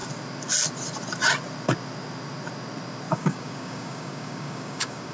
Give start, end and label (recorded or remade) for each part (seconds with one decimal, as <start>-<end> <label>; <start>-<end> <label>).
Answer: 0.0-3.1 recorded; 3.1-5.1 remade